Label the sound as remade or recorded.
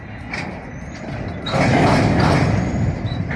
recorded